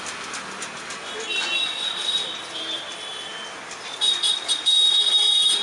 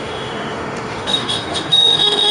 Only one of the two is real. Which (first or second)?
first